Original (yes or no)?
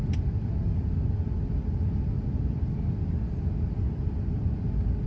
yes